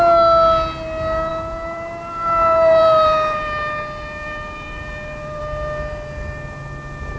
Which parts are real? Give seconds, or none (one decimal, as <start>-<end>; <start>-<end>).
0.0-1.3; 5.4-7.2